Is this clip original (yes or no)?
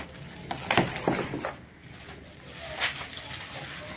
yes